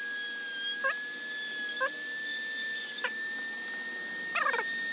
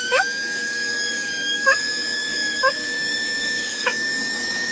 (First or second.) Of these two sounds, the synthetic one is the second